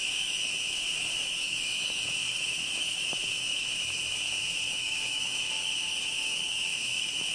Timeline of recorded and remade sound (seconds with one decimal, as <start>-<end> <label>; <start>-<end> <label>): 0.0-7.3 remade